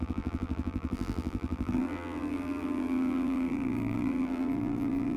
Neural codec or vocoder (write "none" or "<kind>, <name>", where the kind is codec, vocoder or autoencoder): vocoder, BigVGAN v2